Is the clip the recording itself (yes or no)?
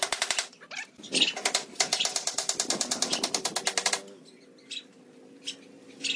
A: yes